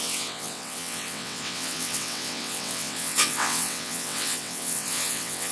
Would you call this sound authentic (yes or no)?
no